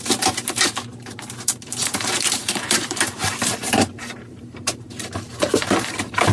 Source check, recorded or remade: remade